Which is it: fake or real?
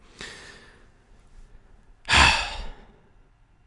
fake